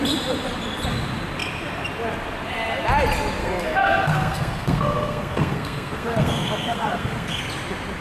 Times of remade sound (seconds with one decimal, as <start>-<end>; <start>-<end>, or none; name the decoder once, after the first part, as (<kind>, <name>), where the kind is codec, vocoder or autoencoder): 3.4-7.4 (codec, SNAC)